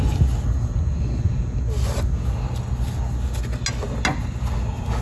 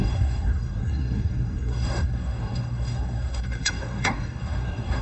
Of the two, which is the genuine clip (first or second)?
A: first